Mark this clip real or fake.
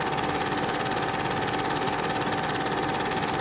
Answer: real